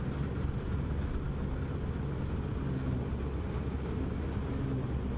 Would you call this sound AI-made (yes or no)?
no